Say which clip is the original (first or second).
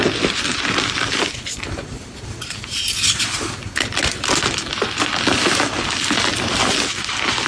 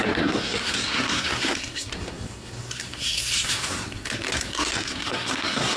first